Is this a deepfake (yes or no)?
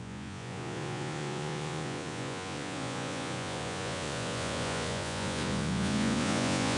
yes